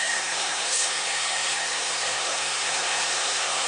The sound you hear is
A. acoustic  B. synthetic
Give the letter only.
B